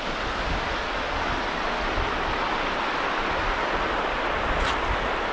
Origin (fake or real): real